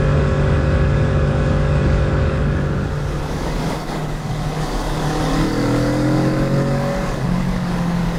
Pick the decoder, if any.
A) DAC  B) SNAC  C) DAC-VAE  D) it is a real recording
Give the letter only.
A